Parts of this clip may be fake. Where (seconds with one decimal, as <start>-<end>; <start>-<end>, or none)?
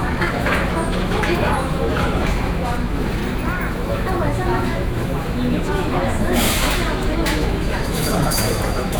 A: 0.0-3.2; 3.7-9.0